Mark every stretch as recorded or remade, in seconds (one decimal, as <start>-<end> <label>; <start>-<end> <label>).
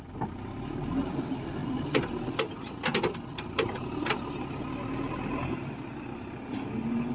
0.0-7.1 recorded